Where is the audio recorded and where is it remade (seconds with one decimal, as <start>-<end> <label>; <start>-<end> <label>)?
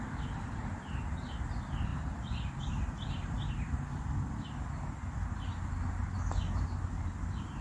0.0-7.6 recorded